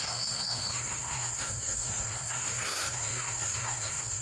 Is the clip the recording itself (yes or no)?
no